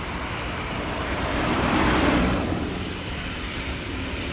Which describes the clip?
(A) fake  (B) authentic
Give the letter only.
A